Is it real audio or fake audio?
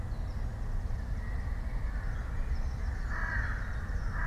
real